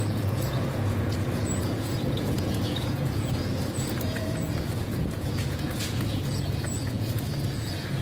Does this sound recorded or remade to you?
remade